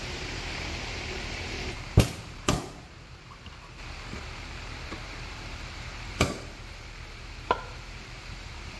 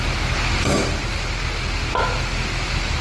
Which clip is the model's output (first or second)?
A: first